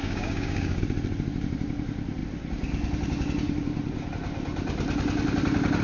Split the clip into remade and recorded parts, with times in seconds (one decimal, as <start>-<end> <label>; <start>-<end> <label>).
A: 0.0-0.8 remade; 0.8-5.8 recorded